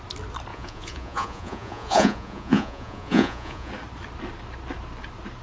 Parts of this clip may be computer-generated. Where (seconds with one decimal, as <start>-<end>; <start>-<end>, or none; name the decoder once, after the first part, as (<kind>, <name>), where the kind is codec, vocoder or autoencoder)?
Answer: 0.5-3.7 (vocoder, Vocos)